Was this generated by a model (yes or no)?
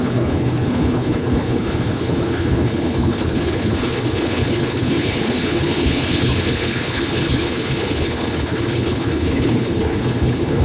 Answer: yes